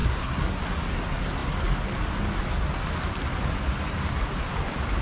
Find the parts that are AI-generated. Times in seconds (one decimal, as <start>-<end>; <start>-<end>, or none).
0.0-0.6